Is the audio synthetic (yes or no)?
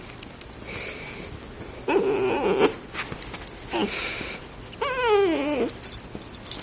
no